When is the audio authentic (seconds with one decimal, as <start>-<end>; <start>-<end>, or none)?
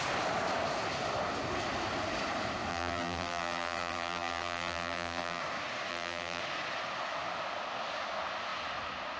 0.0-2.7; 5.4-5.9; 6.4-9.2